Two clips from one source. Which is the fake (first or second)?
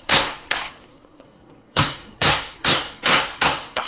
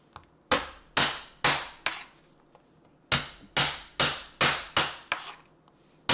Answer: first